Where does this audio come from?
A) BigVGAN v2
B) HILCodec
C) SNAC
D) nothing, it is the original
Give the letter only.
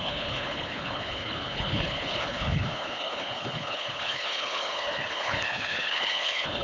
B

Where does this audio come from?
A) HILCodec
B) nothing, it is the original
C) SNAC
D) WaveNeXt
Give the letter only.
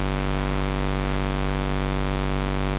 B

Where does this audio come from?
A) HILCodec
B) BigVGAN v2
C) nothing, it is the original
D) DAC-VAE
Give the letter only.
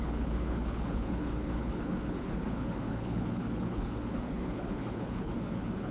A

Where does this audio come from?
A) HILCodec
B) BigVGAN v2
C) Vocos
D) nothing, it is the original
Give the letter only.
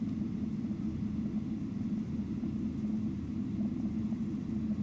D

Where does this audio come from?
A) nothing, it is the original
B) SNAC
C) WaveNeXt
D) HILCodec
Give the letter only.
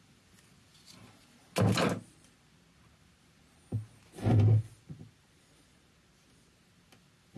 A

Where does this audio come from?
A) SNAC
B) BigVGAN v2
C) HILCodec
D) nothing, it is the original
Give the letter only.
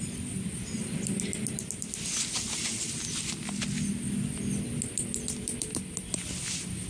D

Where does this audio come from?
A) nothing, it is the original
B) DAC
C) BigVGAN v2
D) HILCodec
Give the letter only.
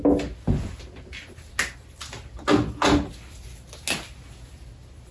A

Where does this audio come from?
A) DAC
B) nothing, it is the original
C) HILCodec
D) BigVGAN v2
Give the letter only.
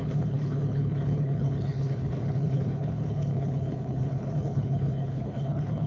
C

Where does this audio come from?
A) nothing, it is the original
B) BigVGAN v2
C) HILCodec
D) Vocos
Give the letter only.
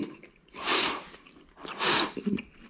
A